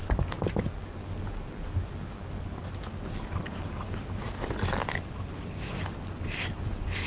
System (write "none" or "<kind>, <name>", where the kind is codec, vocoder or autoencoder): none